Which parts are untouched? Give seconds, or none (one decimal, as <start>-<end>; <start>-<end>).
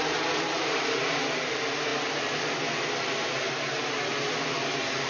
0.0-5.1